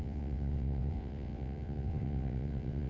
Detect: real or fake fake